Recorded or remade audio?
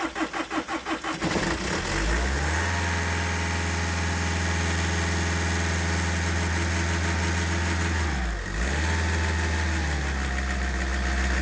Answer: recorded